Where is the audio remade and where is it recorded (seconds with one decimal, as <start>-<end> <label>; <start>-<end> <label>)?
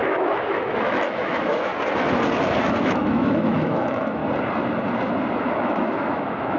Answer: 0.0-1.7 remade; 1.7-2.8 recorded; 2.8-4.2 remade; 4.2-5.5 recorded; 5.5-6.6 remade